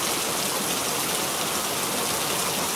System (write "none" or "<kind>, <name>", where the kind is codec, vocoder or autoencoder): none